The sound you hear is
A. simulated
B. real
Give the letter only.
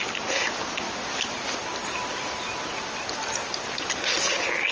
B